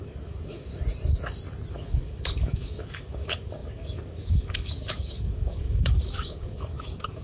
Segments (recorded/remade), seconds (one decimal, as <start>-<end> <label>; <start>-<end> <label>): 0.0-0.7 remade; 0.7-1.7 recorded; 1.7-7.2 remade